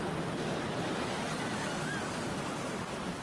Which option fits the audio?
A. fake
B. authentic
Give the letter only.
B